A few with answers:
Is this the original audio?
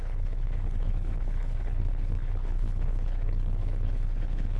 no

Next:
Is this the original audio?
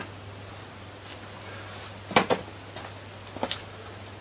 yes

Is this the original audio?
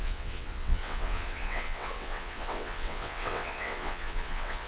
no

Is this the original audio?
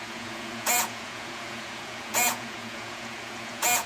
no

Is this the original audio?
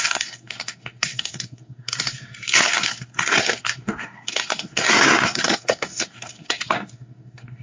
no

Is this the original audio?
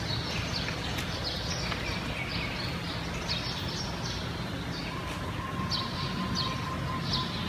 yes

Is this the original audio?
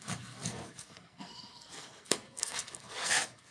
no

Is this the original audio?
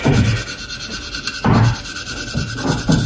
yes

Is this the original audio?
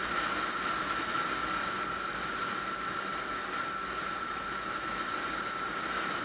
yes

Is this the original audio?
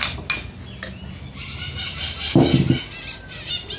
yes